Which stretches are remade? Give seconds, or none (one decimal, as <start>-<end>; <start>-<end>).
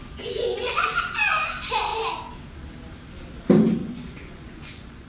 0.4-0.9; 3.8-5.1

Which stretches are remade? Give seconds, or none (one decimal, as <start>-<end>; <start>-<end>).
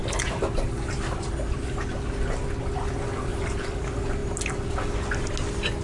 3.3-3.8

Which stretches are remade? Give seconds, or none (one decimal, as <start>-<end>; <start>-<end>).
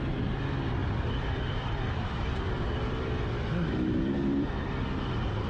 0.8-4.1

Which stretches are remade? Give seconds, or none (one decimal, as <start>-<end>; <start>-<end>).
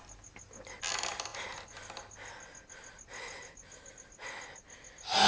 none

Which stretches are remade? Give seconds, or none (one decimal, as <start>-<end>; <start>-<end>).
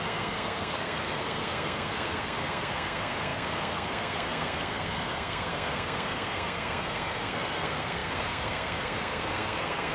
0.0-9.9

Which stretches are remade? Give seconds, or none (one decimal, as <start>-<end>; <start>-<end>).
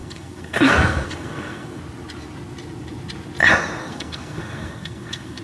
0.0-1.8; 3.8-5.4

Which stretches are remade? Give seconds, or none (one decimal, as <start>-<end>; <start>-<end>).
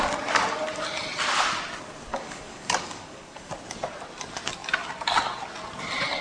2.1-3.5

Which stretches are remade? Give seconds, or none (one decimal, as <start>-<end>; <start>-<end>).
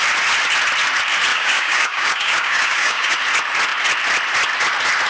1.3-3.1